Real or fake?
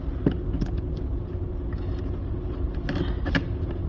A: real